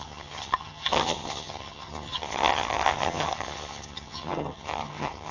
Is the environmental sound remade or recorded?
remade